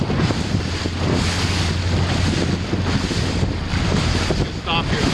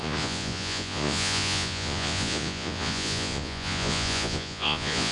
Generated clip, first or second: second